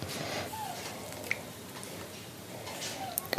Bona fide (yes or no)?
yes